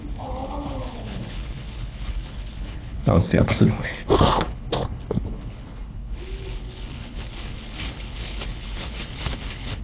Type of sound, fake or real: fake